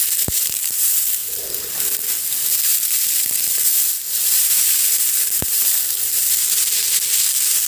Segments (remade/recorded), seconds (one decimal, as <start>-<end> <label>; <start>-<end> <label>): 0.0-7.7 recorded